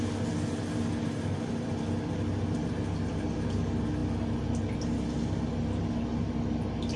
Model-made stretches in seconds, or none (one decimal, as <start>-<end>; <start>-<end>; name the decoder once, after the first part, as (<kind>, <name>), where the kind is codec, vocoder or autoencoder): none